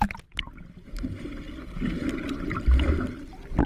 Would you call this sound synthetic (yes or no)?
no